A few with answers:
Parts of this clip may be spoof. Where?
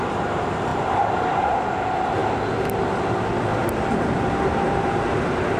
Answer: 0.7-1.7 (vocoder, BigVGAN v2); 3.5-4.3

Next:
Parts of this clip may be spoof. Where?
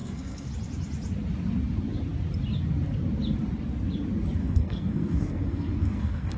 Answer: 0.0-0.5 (codec, SNAC); 4.4-6.4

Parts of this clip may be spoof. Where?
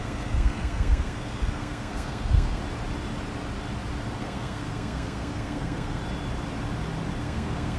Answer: 0.0-2.6 (codec, SNAC); 4.2-6.0; 7.2-7.8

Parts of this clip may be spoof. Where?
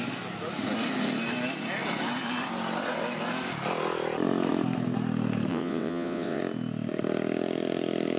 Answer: 5.5-6.4 (vocoder, WaveNeXt)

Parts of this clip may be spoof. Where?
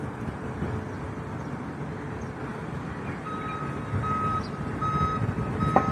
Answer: none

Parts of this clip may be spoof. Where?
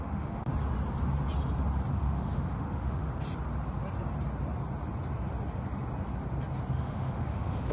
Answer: 0.0-0.5 (autoencoder, DAC-VAE); 1.9-3.1; 6.7-7.7